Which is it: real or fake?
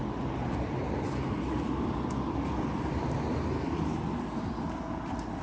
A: real